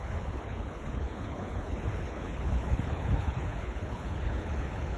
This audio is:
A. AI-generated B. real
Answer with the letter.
A